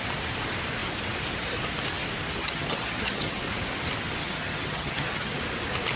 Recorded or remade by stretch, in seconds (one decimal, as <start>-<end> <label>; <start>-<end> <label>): 0.0-2.4 recorded; 2.4-3.4 remade; 3.4-4.2 recorded; 4.2-5.4 remade; 5.4-6.0 recorded